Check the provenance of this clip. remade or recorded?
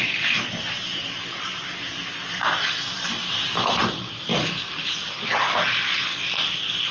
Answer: remade